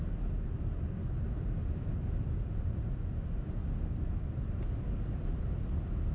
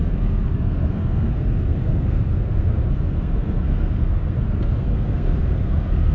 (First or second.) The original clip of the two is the first